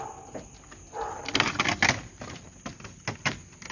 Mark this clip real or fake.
real